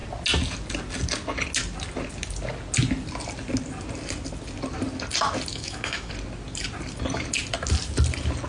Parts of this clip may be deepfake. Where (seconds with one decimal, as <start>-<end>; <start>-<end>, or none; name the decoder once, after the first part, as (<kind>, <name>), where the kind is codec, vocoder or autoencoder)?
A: 5.5-6.1 (autoencoder, DAC-VAE)